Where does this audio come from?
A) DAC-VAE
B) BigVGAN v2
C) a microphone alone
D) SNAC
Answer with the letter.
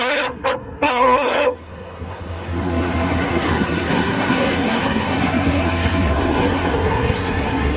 D